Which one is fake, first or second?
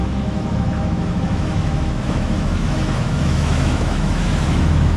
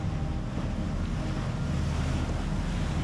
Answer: first